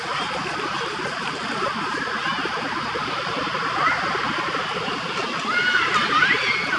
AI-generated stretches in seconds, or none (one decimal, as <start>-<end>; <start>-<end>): none